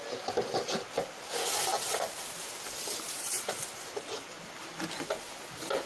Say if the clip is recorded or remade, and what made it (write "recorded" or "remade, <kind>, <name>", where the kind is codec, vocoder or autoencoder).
recorded